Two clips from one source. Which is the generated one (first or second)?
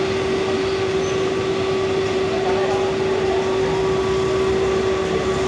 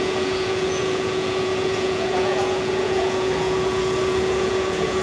second